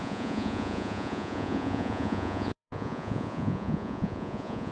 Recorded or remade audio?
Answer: remade